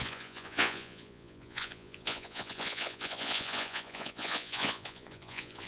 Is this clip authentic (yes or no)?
no